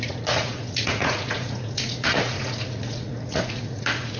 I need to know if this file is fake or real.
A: fake